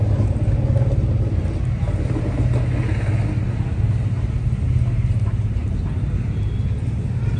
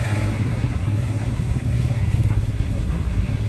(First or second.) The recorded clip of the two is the first